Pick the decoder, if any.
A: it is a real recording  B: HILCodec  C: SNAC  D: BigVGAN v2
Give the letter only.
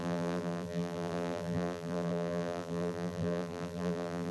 D